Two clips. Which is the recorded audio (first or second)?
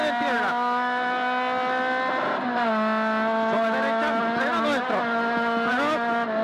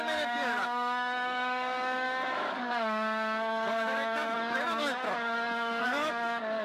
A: first